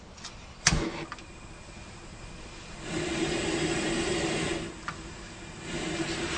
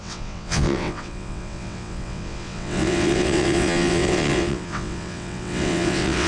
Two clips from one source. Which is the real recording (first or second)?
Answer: first